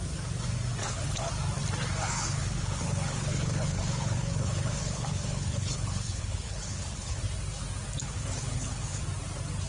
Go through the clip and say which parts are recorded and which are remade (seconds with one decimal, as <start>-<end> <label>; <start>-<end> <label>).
0.0-0.8 recorded; 0.8-1.3 remade; 1.3-2.0 recorded; 2.0-7.2 remade; 7.2-8.0 recorded; 8.0-9.0 remade; 9.0-9.7 recorded